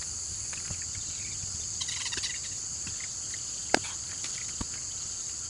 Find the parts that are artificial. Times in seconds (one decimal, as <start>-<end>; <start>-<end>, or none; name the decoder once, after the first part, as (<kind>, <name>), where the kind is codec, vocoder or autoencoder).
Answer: none